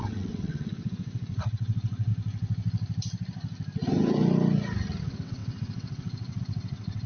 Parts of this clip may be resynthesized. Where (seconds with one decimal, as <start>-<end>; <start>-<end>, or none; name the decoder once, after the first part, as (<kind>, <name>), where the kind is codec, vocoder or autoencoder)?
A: 0.0-2.1 (vocoder, WaveNeXt); 5.0-7.1